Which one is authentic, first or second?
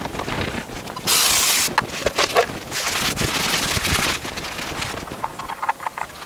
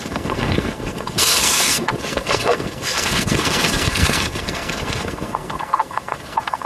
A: first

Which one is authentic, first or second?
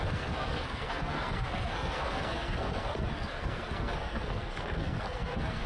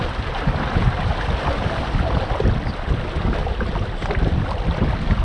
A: second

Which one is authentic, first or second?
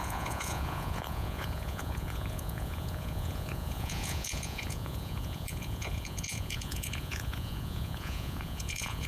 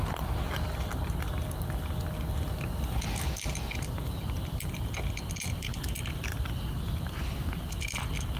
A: second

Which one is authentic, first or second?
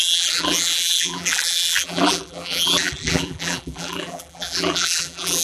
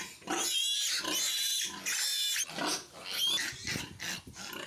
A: second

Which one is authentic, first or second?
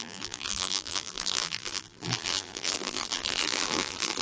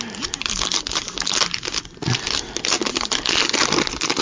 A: second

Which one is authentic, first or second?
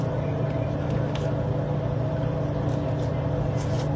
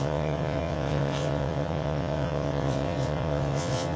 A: first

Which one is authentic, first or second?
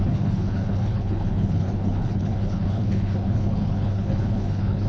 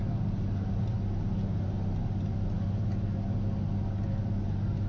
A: second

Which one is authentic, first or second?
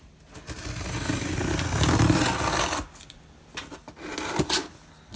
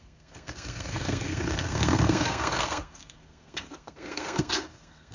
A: first